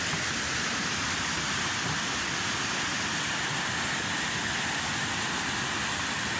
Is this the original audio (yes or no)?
yes